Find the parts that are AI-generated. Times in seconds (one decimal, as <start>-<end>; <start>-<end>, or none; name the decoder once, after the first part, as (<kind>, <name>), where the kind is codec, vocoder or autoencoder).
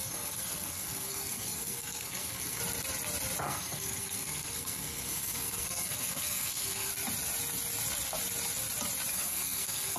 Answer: 0.0-2.6 (codec, SNAC); 3.4-6.9; 9.1-10.0